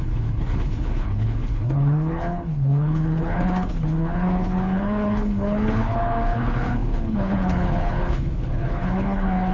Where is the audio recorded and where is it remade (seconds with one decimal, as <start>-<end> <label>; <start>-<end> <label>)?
0.0-9.5 remade